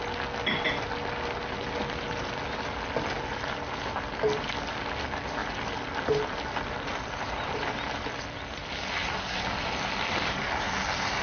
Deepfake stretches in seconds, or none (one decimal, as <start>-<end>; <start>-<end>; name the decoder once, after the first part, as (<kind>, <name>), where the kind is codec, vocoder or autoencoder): none